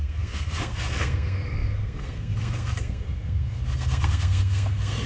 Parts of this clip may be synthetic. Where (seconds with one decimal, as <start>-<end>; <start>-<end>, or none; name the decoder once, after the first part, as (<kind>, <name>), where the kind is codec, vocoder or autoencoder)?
0.0-5.1 (codec, SNAC)